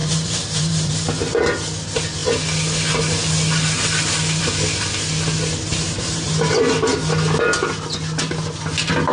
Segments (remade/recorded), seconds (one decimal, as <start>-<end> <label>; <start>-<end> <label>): 0.0-0.9 remade; 0.9-5.7 recorded; 5.7-6.3 remade; 6.3-9.1 recorded